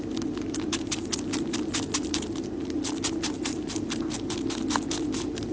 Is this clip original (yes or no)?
yes